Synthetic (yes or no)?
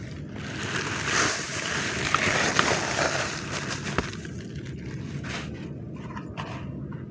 no